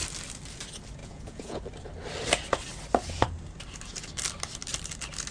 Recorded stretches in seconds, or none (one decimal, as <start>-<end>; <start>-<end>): 0.0-1.0; 1.6-5.3